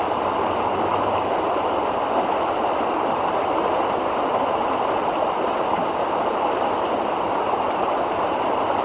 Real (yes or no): yes